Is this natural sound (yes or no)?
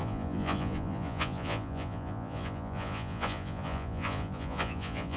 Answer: no